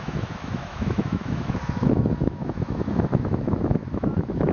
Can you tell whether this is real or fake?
fake